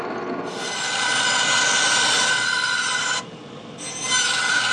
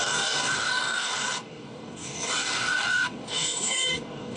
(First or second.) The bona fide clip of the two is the first